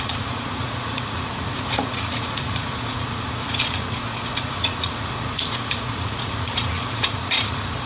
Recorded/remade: remade